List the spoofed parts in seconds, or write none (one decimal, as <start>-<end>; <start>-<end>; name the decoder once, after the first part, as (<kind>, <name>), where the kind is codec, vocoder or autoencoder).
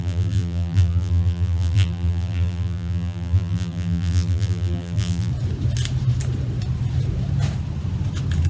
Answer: 0.0-5.3 (vocoder, BigVGAN v2)